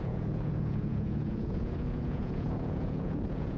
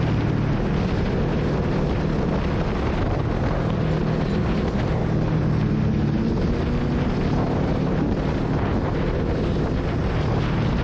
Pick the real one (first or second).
second